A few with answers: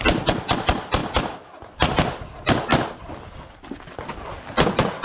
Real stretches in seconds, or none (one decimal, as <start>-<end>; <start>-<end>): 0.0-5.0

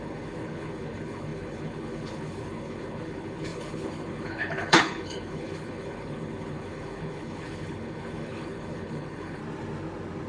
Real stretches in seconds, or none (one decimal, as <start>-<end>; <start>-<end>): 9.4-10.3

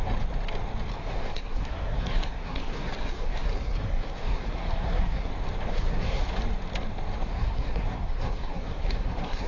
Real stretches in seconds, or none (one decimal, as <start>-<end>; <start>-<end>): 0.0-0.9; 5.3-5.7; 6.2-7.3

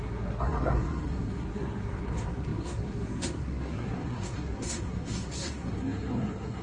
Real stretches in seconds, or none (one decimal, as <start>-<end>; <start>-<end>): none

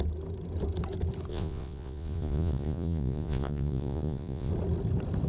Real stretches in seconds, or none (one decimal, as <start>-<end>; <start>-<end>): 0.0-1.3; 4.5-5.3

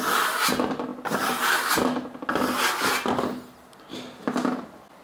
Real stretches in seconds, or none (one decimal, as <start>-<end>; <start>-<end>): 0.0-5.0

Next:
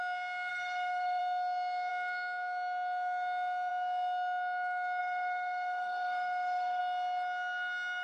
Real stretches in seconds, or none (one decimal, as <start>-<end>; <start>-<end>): 0.0-0.5; 1.2-5.0; 6.8-8.0